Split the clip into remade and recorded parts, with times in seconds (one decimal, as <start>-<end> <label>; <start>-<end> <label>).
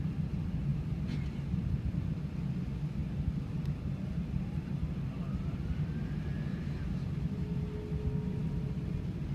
0.0-9.3 recorded